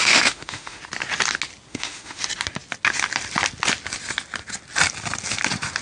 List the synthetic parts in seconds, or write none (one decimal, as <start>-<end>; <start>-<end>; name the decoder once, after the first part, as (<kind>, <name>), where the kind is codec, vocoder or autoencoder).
0.0-0.8 (autoencoder, DAC-VAE); 1.7-2.2